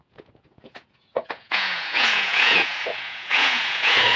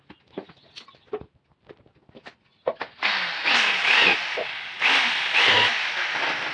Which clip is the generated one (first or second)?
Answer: first